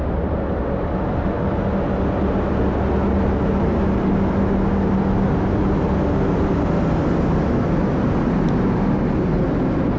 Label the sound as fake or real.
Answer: real